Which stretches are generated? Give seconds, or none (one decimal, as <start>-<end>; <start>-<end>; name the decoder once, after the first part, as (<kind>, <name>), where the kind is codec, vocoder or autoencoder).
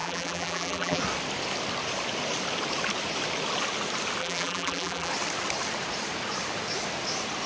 0.0-1.0 (vocoder, BigVGAN v2); 4.2-5.1